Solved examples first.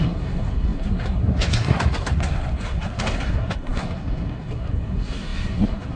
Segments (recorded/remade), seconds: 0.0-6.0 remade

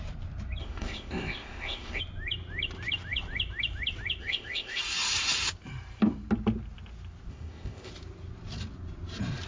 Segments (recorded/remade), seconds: 0.0-0.6 recorded; 0.6-2.0 remade; 2.0-4.2 recorded; 4.2-4.8 remade; 4.8-7.3 recorded; 7.3-7.9 remade; 7.9-9.5 recorded

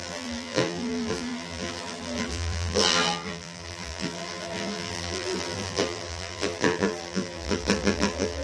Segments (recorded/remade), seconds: 0.0-8.4 remade